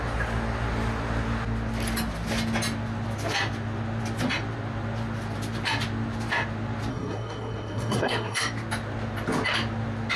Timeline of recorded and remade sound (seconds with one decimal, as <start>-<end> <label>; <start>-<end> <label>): 0.0-6.9 recorded; 6.9-8.4 remade; 8.4-10.2 recorded